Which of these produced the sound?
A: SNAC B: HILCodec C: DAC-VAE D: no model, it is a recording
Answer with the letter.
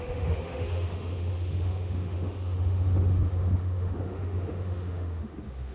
C